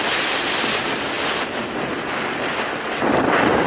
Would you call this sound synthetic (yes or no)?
no